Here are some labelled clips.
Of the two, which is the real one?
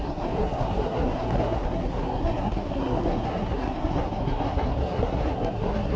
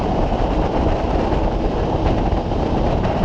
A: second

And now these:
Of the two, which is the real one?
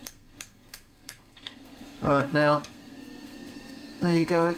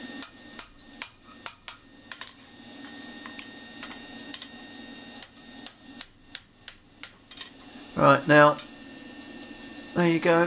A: second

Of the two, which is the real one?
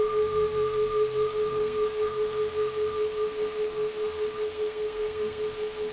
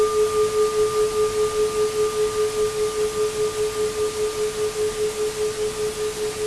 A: second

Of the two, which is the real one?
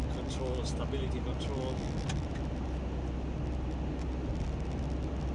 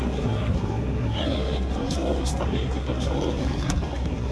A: first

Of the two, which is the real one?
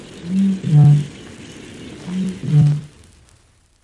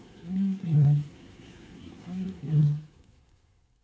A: first